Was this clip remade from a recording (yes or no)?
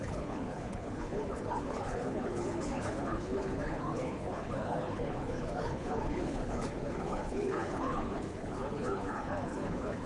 yes